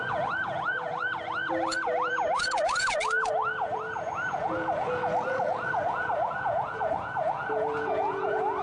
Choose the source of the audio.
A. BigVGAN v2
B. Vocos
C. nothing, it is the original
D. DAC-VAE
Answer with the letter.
B